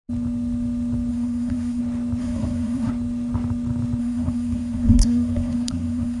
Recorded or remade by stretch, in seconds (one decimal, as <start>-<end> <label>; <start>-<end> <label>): 0.0-1.1 recorded; 1.1-1.8 remade; 1.8-2.2 recorded; 2.2-2.9 remade; 2.9-4.0 recorded; 4.0-6.2 remade